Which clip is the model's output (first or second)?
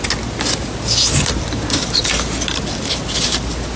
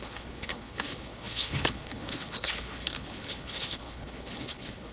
second